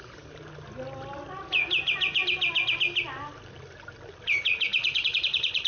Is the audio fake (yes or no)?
no